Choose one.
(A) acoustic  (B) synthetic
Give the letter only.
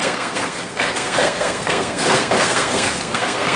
B